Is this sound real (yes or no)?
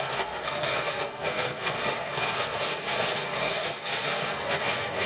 no